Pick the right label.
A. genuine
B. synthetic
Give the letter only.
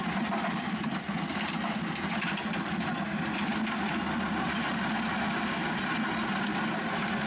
A